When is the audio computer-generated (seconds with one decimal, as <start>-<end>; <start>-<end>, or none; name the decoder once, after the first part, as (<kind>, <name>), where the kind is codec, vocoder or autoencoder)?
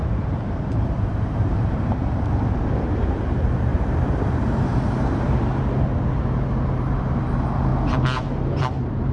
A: 0.8-9.1 (vocoder, BigVGAN v2)